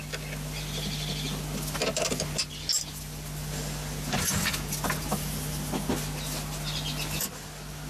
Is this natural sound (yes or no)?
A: yes